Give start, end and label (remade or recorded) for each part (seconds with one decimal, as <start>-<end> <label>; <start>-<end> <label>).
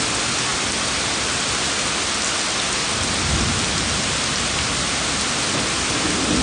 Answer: 0.0-0.5 recorded; 0.5-1.4 remade; 1.4-6.4 recorded